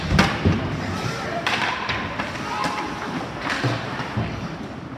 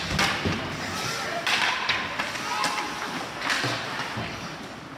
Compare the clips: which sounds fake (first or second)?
first